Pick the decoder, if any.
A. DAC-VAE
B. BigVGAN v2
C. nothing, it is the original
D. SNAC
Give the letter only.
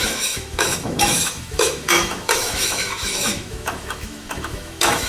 A